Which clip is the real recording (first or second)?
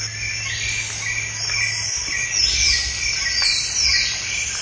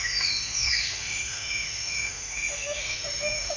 first